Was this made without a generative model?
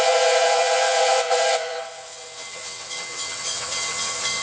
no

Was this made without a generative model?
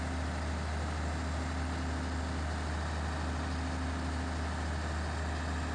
yes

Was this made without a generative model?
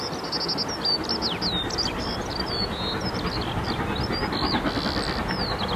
yes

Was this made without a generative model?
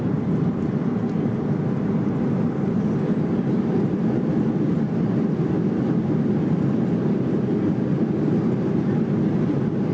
yes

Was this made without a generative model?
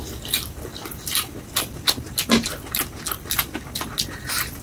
yes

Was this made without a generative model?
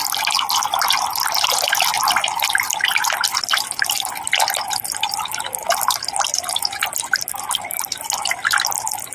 yes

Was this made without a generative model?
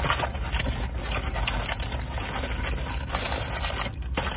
yes